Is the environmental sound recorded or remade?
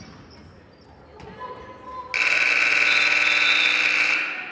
recorded